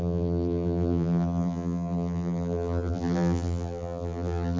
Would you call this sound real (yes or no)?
no